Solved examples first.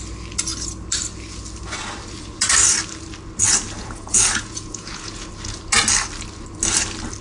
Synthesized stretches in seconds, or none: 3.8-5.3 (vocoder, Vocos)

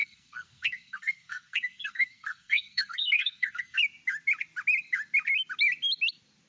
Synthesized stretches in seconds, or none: 0.0-3.8 (codec, SNAC)

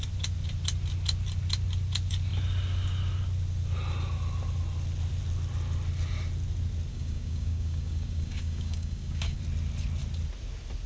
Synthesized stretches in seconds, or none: 6.9-9.4 (codec, DAC)

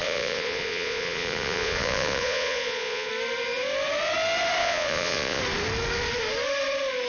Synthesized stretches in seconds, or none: 0.0-3.1 (vocoder, Vocos); 4.6-5.4

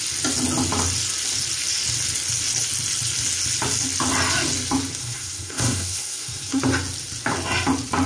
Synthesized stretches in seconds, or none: 5.0-6.6 (codec, SNAC)

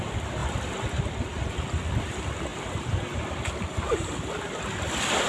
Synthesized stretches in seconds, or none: none

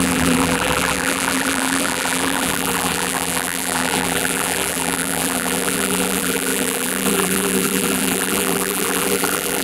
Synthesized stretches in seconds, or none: 0.0-9.6 (vocoder, BigVGAN v2)

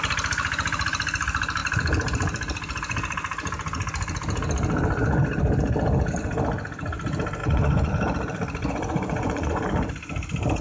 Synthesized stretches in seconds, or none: 7.4-7.9 (vocoder, Vocos); 8.6-9.6